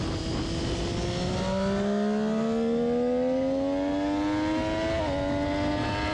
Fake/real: real